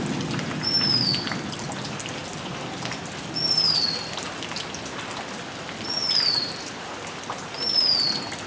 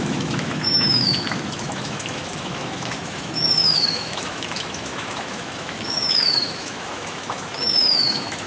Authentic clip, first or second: first